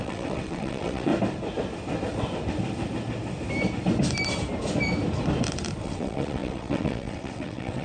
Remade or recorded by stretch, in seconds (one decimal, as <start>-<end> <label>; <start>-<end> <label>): 0.0-1.1 remade; 1.1-5.8 recorded; 5.8-7.8 remade